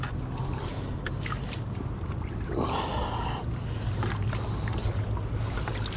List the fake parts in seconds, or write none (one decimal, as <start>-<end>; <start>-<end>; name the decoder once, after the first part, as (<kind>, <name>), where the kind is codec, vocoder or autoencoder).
none

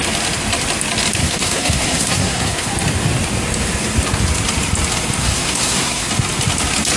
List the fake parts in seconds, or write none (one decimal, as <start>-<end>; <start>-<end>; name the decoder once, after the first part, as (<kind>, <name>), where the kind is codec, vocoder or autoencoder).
1.2-2.7 (codec, SNAC); 5.2-6.1